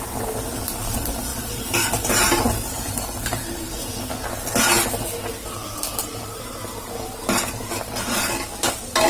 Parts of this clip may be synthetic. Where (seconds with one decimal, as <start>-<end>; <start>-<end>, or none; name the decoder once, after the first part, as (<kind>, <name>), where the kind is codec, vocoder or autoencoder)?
1.3-3.9 (vocoder, BigVGAN v2); 6.0-6.5